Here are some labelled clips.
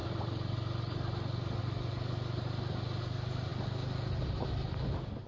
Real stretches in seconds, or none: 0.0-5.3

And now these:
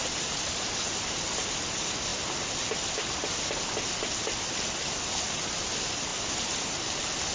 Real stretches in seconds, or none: 0.0-7.3

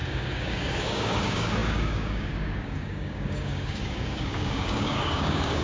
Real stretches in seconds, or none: none

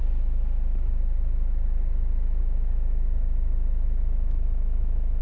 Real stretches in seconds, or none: 0.0-5.2